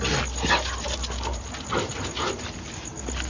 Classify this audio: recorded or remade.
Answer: recorded